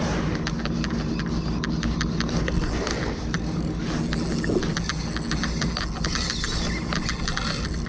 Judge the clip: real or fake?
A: real